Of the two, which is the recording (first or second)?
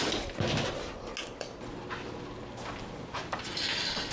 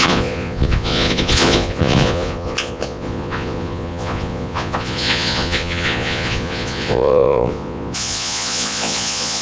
first